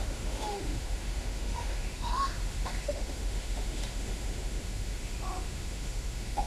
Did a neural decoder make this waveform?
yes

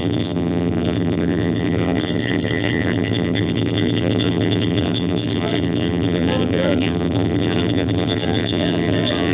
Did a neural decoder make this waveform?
yes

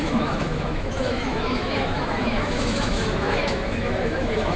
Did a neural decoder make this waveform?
yes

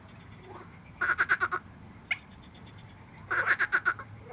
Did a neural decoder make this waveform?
no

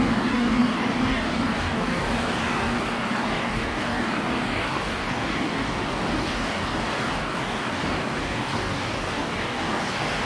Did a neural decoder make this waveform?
yes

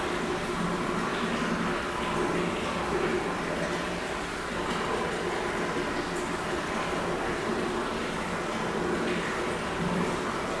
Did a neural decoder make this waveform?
no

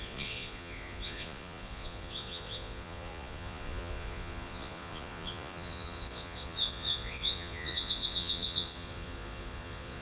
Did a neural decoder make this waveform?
yes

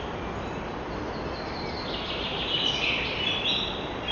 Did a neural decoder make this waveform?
no